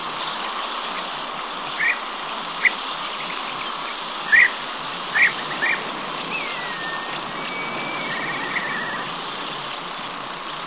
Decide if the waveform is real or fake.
real